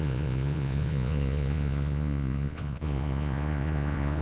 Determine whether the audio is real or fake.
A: fake